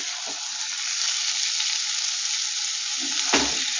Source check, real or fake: real